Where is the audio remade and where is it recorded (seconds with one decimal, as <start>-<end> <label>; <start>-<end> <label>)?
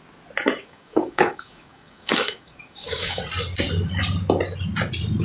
0.0-0.6 recorded; 0.6-3.2 remade; 3.2-5.2 recorded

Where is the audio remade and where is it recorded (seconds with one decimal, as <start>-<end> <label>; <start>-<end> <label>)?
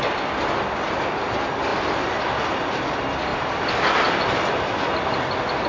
0.0-3.3 recorded; 3.3-4.3 remade; 4.3-5.7 recorded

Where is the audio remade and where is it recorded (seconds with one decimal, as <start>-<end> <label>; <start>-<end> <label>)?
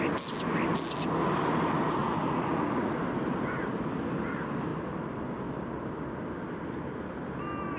0.0-2.0 recorded; 2.0-3.0 remade; 3.0-7.8 recorded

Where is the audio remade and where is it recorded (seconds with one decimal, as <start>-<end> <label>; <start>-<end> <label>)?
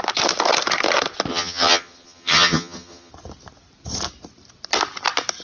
0.0-1.3 recorded; 1.3-3.1 remade; 3.1-5.4 recorded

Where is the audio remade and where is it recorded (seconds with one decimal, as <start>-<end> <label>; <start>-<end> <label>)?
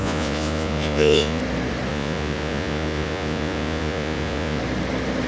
0.0-1.4 remade; 1.4-1.9 recorded; 1.9-4.6 remade; 4.6-5.3 recorded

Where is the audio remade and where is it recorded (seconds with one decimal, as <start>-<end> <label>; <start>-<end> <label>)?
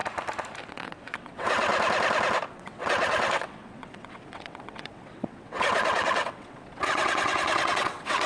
0.0-0.7 recorded; 0.7-1.7 remade; 1.7-2.5 recorded; 2.5-8.3 remade